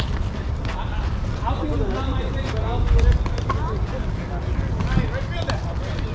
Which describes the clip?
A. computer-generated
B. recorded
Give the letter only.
B